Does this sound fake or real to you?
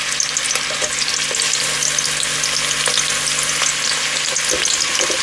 real